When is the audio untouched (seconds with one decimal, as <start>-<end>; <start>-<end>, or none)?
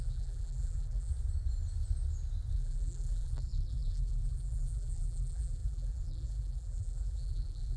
1.1-2.5